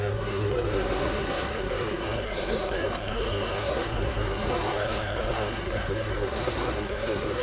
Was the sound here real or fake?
fake